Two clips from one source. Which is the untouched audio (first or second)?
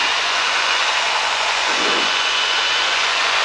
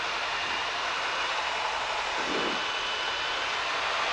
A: second